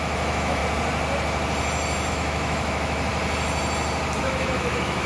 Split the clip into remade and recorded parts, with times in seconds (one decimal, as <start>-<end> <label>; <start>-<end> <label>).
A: 0.0-0.6 remade; 0.6-2.1 recorded; 2.1-3.1 remade; 3.1-4.2 recorded; 4.2-5.1 remade